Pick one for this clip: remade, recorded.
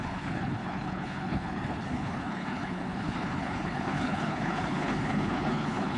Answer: remade